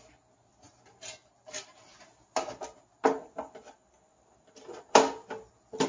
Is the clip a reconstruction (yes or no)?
no